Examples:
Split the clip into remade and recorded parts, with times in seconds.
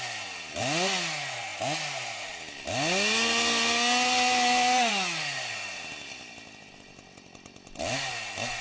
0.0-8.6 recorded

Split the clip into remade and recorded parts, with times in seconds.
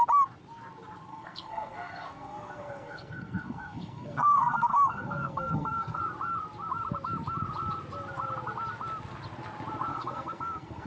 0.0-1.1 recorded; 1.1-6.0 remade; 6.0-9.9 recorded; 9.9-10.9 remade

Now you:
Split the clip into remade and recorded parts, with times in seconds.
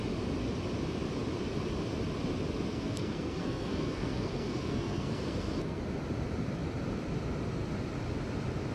0.0-2.7 recorded; 2.7-5.8 remade; 5.8-8.7 recorded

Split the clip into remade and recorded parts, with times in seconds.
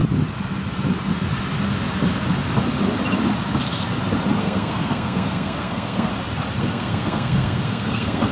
0.0-4.4 recorded; 4.4-6.1 remade; 6.1-6.6 recorded; 6.6-8.3 remade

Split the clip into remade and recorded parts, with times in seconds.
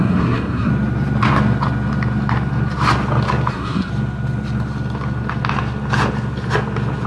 0.0-0.7 remade; 0.7-3.5 recorded; 3.5-3.9 remade; 3.9-7.1 recorded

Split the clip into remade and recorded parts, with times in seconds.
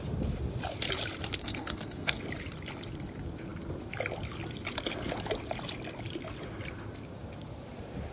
0.0-1.4 recorded; 1.4-2.2 remade; 2.2-8.1 recorded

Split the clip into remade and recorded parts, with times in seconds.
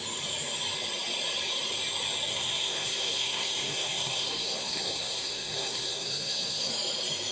0.0-2.3 recorded; 2.3-6.7 remade; 6.7-7.3 recorded